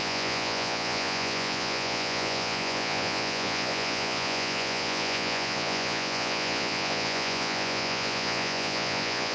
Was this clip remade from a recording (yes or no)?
yes